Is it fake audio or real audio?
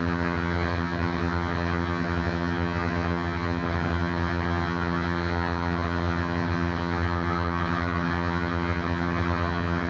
fake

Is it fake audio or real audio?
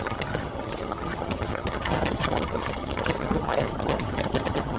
fake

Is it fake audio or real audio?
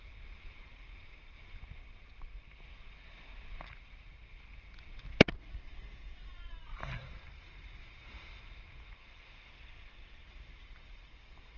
real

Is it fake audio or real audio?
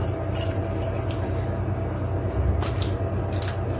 real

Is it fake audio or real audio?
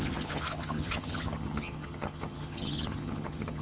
fake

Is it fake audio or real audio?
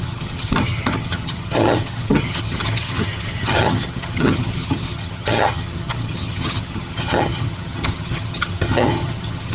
fake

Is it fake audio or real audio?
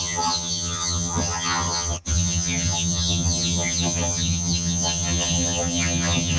fake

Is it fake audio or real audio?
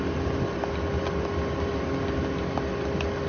real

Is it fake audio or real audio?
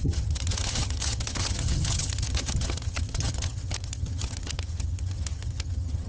fake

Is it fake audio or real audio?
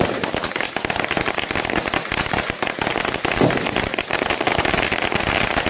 real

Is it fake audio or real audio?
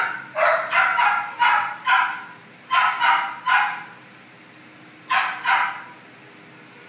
real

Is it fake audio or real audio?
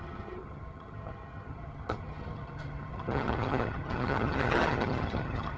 fake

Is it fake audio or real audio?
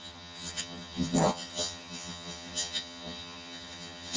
fake